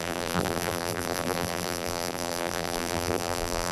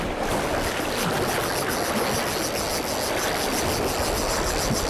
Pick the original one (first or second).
second